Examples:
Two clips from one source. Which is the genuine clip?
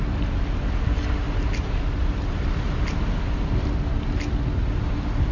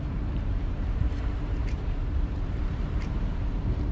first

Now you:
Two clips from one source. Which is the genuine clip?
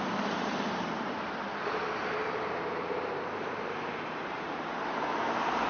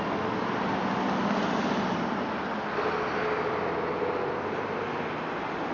second